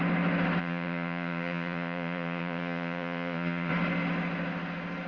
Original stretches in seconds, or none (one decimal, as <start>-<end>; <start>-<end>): 0.0-0.6; 3.7-5.1